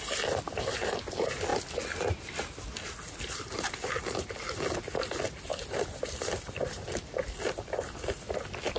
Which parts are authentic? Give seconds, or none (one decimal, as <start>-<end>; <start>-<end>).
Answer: 0.0-5.5; 8.2-8.8